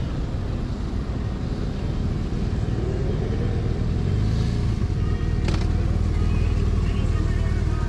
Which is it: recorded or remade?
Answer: recorded